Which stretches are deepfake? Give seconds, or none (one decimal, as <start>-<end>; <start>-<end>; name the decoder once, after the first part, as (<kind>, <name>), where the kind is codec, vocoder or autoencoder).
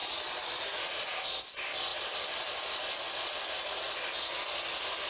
none